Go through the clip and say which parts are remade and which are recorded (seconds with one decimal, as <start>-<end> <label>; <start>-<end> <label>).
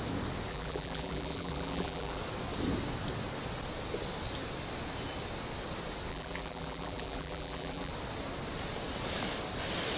0.0-0.5 recorded; 0.5-2.2 remade; 2.2-6.1 recorded; 6.1-7.9 remade; 7.9-10.0 recorded